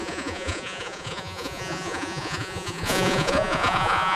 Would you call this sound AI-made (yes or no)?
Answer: yes